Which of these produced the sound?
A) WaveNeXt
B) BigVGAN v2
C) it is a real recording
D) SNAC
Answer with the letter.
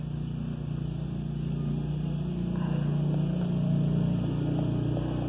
C